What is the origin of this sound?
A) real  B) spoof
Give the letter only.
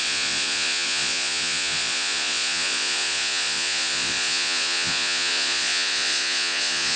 B